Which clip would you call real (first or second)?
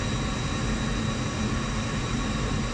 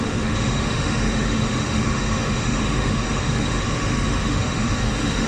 first